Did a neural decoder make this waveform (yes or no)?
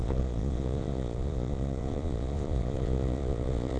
yes